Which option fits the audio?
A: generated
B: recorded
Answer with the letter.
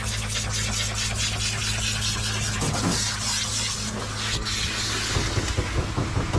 B